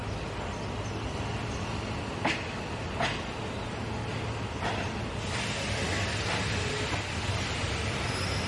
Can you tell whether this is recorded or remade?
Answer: recorded